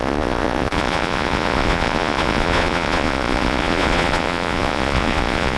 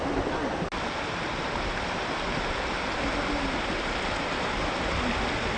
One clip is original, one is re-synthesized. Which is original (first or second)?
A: second